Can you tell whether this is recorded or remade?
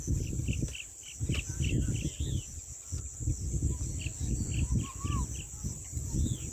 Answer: recorded